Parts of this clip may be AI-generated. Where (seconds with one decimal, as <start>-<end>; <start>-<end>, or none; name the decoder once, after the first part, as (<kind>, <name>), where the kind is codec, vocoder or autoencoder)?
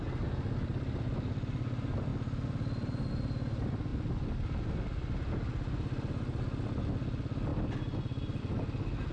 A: none